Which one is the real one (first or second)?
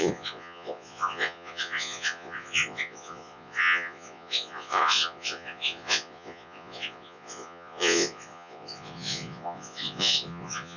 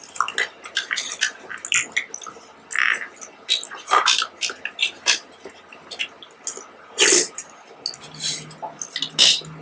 second